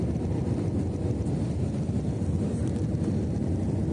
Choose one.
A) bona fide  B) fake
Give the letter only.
A